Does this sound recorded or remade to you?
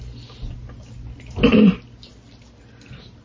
recorded